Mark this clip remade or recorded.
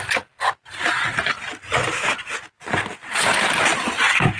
recorded